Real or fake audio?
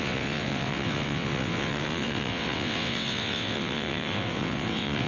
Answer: fake